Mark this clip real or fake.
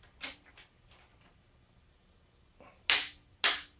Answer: real